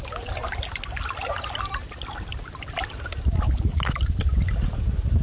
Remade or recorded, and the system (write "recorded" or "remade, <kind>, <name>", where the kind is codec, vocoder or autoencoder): recorded